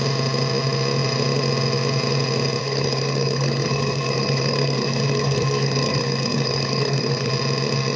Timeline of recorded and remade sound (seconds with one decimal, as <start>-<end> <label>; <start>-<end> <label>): 0.0-2.6 recorded; 2.6-7.3 remade; 7.3-8.0 recorded